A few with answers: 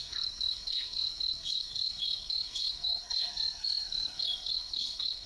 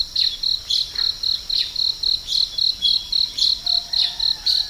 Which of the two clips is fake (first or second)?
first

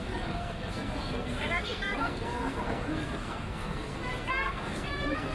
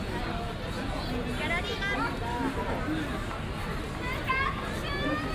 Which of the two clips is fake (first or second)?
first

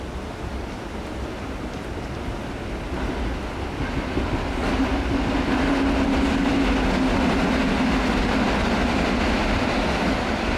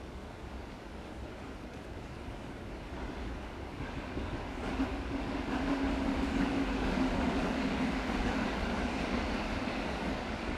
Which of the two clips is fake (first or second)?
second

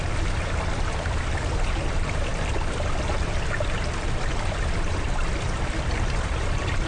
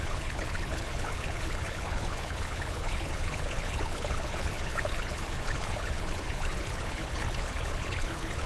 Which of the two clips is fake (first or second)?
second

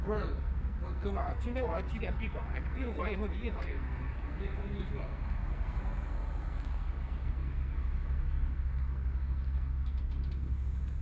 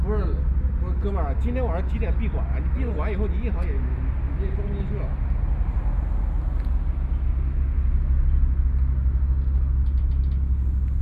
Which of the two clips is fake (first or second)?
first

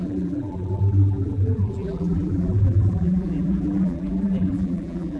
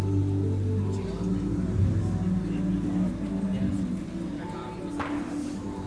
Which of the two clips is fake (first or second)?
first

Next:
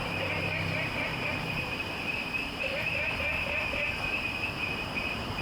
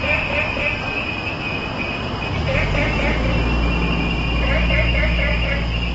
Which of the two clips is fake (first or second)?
first